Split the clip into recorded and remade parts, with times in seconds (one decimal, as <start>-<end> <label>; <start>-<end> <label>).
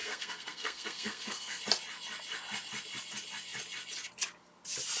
0.0-1.6 remade; 1.6-5.0 recorded